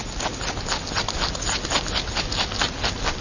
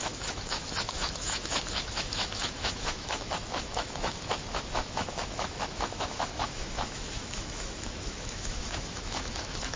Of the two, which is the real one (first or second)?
first